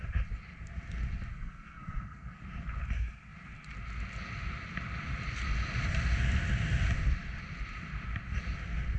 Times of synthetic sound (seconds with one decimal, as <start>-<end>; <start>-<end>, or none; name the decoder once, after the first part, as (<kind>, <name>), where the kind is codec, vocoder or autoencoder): 1.3-2.4 (codec, SNAC)